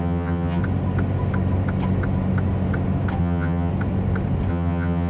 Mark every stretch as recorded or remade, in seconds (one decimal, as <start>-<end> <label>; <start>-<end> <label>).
0.0-0.6 remade; 0.6-3.2 recorded; 3.2-3.7 remade; 3.7-4.5 recorded; 4.5-5.1 remade

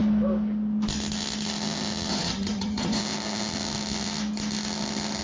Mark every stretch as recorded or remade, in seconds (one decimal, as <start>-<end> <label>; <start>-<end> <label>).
0.0-2.1 recorded; 2.1-3.0 remade; 3.0-5.2 recorded

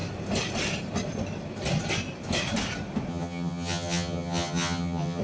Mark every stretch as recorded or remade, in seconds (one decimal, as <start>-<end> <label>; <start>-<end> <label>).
0.0-3.1 recorded; 3.1-5.2 remade

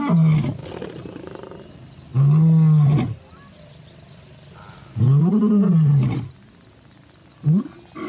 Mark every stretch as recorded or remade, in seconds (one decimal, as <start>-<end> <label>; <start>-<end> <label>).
0.0-8.1 recorded

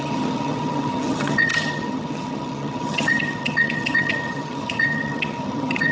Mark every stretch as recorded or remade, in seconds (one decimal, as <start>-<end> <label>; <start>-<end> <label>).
0.0-5.9 remade

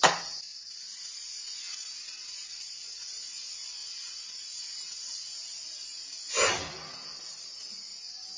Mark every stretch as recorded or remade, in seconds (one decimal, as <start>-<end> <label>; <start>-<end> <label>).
0.0-8.4 recorded

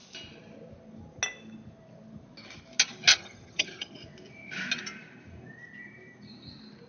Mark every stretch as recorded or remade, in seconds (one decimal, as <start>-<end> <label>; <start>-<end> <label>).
0.0-3.1 recorded; 3.1-3.9 remade; 3.9-6.9 recorded

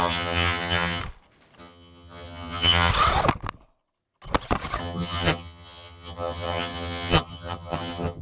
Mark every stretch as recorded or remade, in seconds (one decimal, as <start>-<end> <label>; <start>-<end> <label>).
0.0-1.0 remade; 1.0-1.6 recorded; 1.6-2.9 remade; 2.9-4.8 recorded; 4.8-8.2 remade